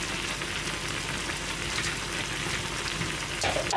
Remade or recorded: recorded